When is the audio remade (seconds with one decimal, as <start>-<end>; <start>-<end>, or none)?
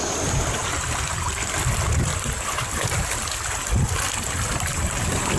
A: none